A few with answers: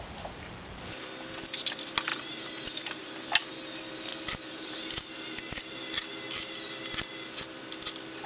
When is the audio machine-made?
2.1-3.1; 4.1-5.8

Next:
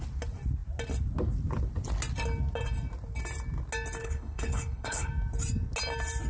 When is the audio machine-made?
4.0-5.1